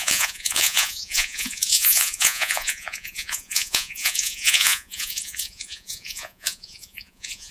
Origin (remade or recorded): remade